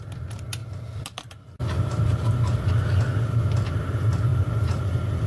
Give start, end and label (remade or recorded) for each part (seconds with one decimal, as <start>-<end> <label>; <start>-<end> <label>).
0.0-5.3 recorded